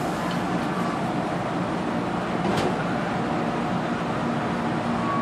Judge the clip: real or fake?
real